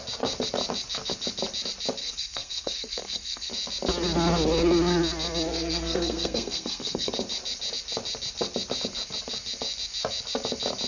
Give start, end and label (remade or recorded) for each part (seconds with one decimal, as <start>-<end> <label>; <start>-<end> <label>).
0.0-2.0 recorded; 2.0-3.5 remade; 3.5-5.5 recorded; 5.5-7.1 remade; 7.1-10.9 recorded